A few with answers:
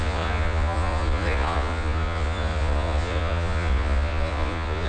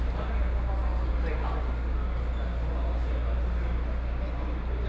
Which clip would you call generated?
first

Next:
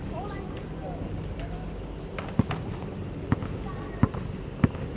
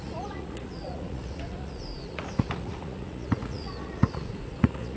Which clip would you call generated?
second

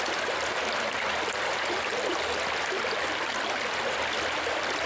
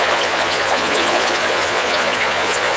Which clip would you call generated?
second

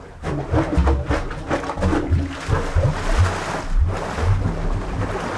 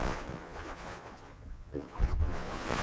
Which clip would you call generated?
second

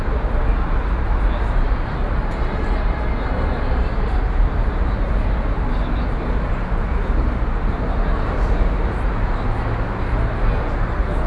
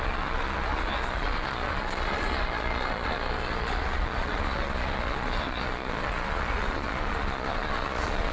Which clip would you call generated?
second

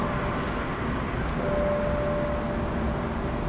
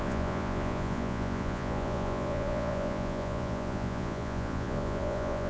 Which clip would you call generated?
second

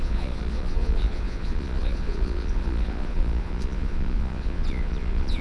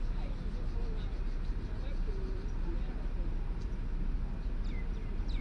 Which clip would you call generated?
first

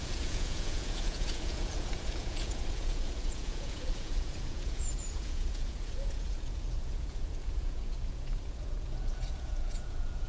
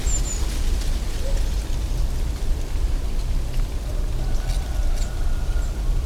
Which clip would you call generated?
first